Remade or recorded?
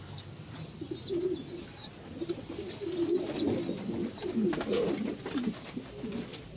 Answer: recorded